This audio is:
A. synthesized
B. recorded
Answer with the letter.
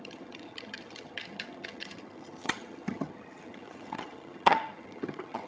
A